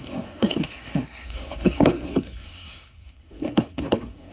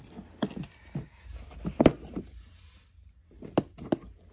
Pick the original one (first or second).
second